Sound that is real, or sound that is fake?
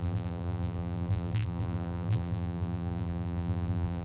fake